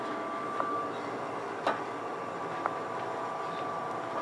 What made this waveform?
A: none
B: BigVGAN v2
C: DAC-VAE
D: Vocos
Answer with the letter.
A